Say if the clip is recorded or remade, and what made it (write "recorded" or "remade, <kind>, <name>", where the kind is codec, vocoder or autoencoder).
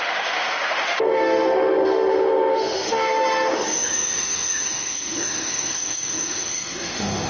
remade, autoencoder, DAC-VAE